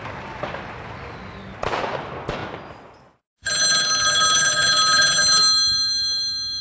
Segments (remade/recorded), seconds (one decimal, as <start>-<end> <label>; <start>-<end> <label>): 0.0-6.6 recorded

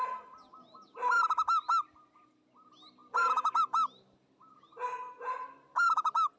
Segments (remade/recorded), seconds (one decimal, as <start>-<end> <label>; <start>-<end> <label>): 0.0-6.4 recorded